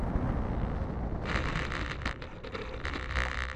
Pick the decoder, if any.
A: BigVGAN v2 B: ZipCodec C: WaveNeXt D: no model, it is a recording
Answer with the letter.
D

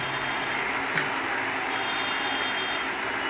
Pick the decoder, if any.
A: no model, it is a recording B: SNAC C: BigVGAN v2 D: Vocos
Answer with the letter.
A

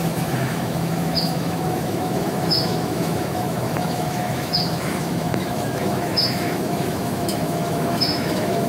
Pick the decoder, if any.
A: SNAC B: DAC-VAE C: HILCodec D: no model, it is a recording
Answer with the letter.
B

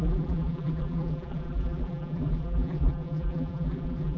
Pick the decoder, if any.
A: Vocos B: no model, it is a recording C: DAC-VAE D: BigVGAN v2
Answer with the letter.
D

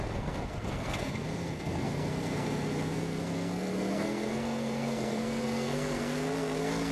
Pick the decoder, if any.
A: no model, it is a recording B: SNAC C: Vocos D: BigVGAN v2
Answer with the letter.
B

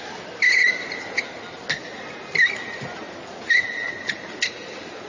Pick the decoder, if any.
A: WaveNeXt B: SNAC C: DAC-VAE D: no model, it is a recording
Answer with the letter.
D